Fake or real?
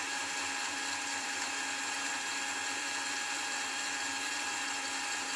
fake